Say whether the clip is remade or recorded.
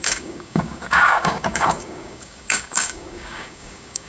remade